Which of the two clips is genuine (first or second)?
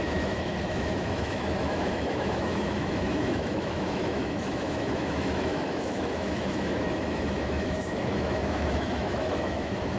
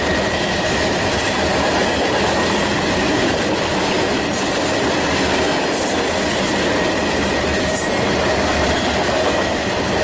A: second